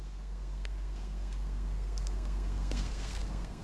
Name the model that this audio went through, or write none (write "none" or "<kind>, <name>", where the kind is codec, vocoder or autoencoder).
codec, SNAC